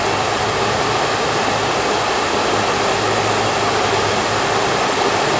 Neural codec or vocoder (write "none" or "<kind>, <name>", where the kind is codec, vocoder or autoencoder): none